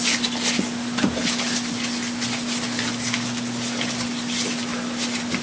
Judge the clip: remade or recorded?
recorded